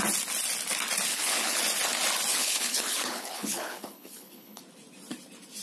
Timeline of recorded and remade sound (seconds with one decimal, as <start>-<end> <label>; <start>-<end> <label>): 0.0-1.1 recorded; 1.1-1.6 remade; 1.6-2.3 recorded; 2.3-4.6 remade; 4.6-5.6 recorded